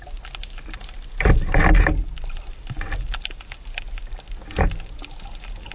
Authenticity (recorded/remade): recorded